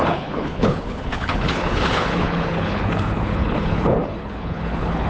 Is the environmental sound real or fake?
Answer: fake